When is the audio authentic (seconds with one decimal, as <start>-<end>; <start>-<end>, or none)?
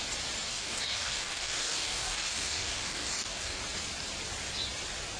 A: 0.0-0.5; 3.6-5.2